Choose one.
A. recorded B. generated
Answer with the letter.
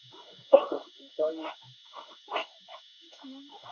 B